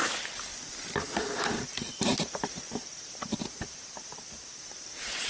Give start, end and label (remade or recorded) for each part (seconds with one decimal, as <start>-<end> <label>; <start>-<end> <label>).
0.0-0.5 remade; 0.5-1.1 recorded; 1.1-5.3 remade